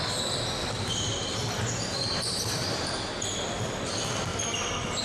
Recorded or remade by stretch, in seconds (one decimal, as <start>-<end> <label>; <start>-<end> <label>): 0.0-0.6 recorded; 0.6-3.6 remade; 3.6-5.0 recorded